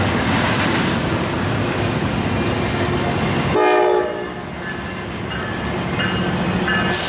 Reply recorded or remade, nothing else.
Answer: recorded